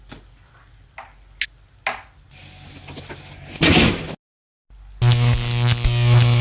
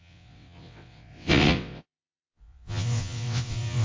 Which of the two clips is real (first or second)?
first